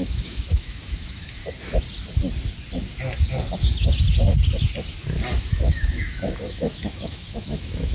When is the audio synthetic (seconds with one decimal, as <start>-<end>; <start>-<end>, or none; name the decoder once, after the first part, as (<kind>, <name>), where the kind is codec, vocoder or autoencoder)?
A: 0.0-1.4 (autoencoder, DAC-VAE); 5.5-7.9